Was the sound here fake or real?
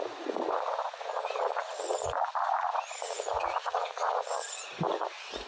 fake